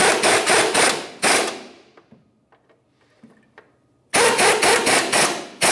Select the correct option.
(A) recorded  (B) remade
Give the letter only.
A